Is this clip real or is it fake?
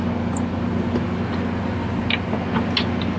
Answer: real